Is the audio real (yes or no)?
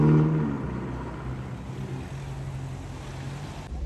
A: yes